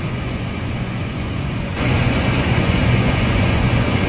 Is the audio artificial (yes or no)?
yes